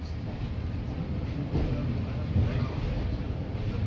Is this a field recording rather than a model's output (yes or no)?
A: yes